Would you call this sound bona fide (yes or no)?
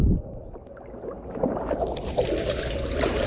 yes